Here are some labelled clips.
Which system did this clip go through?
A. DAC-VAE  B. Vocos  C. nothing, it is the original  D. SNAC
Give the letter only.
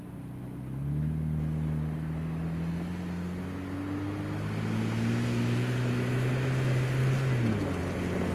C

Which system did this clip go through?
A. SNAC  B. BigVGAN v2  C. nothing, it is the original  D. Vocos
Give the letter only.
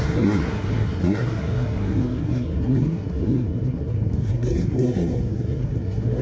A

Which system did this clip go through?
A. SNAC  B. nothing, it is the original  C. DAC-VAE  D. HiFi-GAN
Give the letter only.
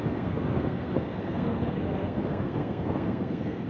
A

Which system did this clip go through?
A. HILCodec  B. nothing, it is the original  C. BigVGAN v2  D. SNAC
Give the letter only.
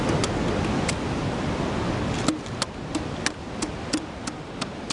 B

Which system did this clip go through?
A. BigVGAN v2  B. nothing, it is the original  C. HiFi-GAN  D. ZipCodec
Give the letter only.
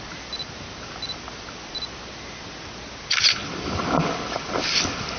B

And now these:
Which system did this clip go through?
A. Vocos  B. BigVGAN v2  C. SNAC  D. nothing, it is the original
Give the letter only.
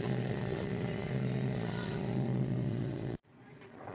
A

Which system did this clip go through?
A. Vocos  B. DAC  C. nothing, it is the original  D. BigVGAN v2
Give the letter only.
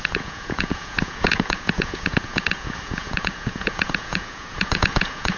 A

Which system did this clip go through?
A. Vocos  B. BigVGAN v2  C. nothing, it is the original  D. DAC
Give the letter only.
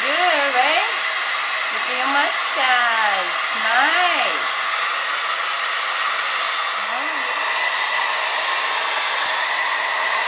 C